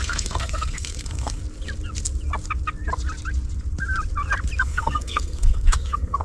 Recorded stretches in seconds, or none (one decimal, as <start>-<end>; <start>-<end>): 1.4-4.6